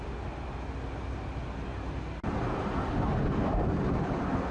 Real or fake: real